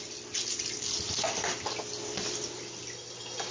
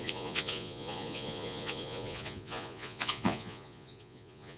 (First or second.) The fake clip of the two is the second